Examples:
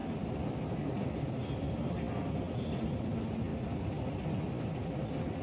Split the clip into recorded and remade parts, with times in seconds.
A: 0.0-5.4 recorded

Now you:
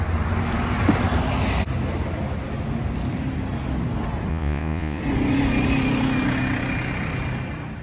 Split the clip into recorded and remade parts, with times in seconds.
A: 0.0-4.3 recorded; 4.3-5.0 remade; 5.0-7.8 recorded

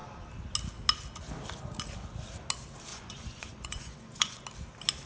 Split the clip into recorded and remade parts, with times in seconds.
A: 0.0-2.9 recorded; 2.9-4.4 remade; 4.4-5.1 recorded

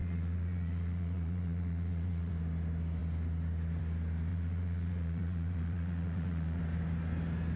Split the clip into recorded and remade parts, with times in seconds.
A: 0.0-2.3 remade; 2.3-4.3 recorded; 4.3-6.6 remade; 6.6-7.6 recorded

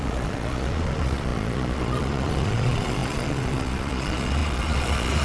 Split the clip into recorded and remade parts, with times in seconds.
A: 0.0-5.2 remade

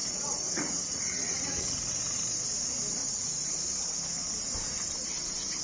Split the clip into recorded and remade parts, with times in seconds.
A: 0.0-2.0 remade; 2.0-3.0 recorded; 3.0-3.5 remade; 3.5-5.6 recorded

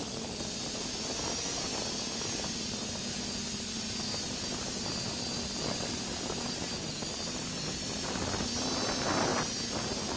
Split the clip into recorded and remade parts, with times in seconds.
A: 0.0-10.2 recorded